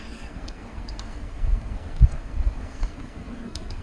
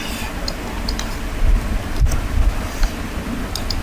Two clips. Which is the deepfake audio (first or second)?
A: first